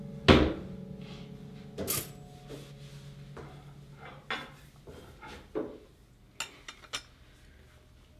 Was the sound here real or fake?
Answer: real